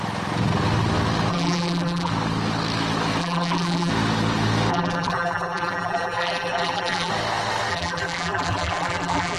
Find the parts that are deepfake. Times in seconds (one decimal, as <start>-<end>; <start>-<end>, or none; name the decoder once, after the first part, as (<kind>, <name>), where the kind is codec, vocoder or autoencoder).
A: 1.3-2.1 (vocoder, BigVGAN v2); 3.2-3.9; 4.7-7.1; 7.7-9.4